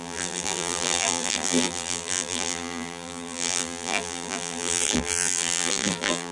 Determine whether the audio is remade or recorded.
remade